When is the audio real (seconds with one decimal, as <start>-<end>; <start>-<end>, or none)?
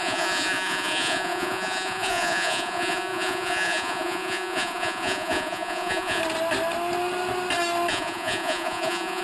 6.2-7.9